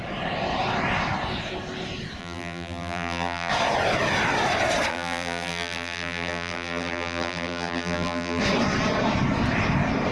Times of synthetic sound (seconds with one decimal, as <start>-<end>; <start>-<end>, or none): 2.2-3.5; 4.9-8.4